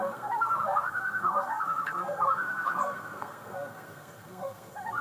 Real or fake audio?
fake